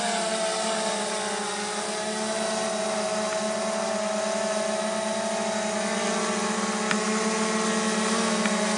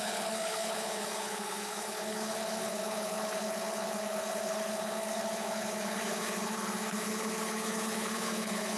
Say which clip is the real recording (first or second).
first